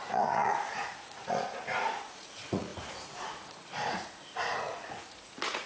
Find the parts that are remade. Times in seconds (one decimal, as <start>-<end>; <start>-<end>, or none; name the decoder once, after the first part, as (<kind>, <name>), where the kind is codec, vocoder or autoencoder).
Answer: 0.0-5.7 (vocoder, Vocos)